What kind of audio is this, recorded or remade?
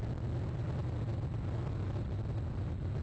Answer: recorded